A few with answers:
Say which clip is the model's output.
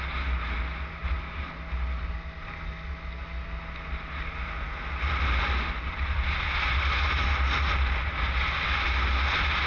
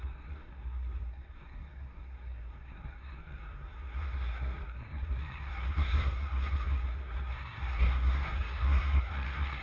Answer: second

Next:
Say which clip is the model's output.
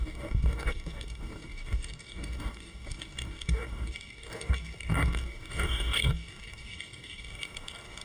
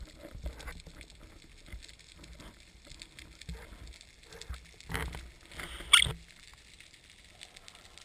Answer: first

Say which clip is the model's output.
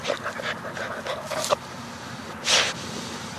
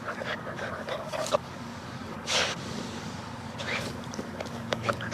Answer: second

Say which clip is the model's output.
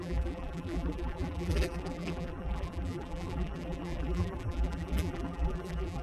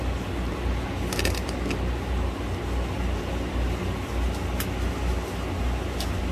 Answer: first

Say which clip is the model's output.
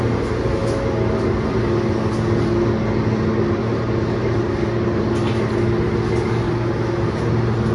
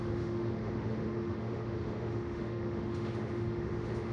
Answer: second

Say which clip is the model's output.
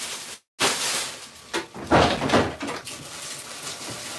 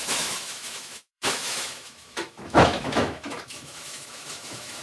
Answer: second